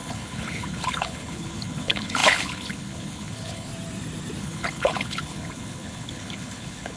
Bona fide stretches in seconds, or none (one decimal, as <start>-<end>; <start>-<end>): 3.7-4.4

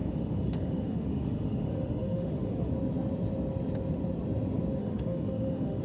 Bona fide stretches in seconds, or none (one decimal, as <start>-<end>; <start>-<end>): 2.7-4.8